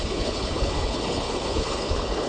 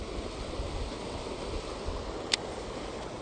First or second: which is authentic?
second